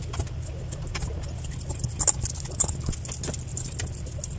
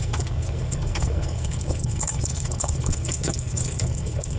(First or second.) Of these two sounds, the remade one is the second